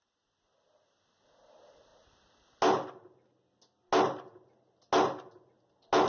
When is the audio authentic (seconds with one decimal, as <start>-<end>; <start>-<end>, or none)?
0.0-6.1